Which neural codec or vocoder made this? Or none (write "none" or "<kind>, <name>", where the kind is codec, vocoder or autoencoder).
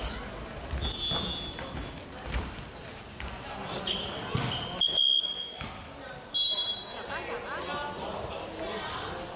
none